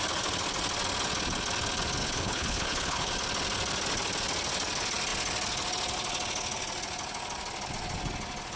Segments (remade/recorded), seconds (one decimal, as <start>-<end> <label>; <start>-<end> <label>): 0.0-2.0 recorded; 2.0-3.1 remade; 3.1-8.6 recorded